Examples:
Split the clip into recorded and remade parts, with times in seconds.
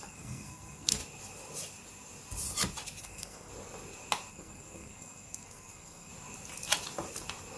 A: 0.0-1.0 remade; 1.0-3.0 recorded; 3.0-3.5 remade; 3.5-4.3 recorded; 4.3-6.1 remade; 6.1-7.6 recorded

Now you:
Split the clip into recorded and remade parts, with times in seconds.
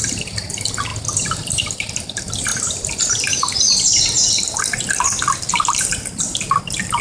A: 0.0-7.0 recorded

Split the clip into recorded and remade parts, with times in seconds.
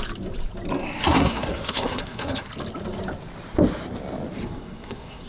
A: 0.0-1.0 recorded; 1.0-2.5 remade; 2.5-4.4 recorded; 4.4-5.3 remade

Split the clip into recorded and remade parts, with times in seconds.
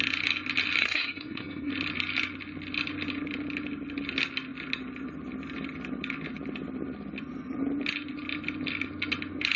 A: 0.0-0.8 recorded; 0.8-1.7 remade; 1.7-9.6 recorded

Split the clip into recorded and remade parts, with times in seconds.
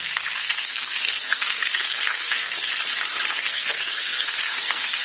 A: 0.0-2.7 remade; 2.7-3.3 recorded; 3.3-5.0 remade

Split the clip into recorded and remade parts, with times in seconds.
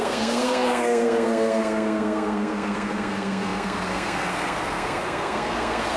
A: 0.0-6.0 remade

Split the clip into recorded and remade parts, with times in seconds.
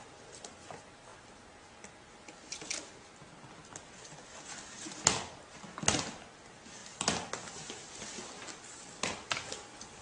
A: 0.0-10.0 recorded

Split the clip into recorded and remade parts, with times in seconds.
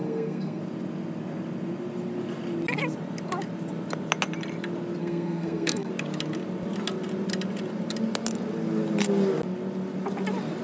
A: 0.0-0.6 remade; 0.6-5.0 recorded; 5.0-5.9 remade; 5.9-10.6 recorded